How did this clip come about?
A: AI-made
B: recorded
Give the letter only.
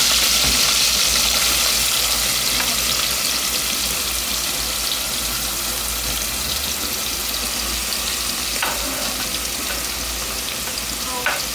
B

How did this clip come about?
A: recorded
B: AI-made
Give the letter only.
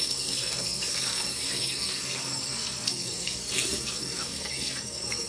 B